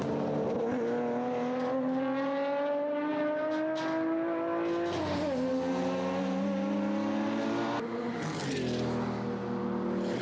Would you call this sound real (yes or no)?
yes